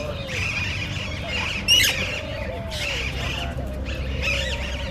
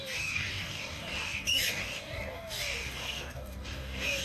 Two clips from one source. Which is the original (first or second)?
first